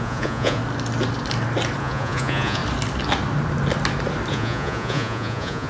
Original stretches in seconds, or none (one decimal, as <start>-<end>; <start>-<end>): 0.6-1.8; 2.6-4.3